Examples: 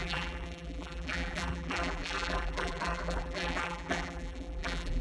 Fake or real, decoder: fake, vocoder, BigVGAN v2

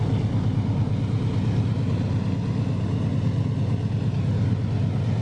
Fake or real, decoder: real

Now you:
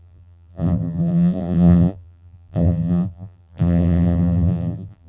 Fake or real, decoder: fake, vocoder, BigVGAN v2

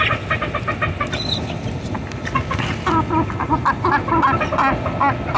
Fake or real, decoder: real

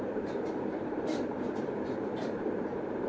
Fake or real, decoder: fake, vocoder, BigVGAN v2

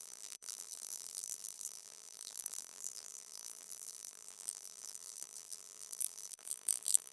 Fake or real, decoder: fake, vocoder, BigVGAN v2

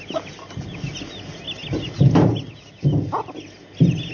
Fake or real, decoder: real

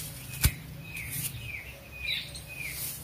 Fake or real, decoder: real